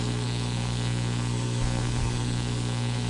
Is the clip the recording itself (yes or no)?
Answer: no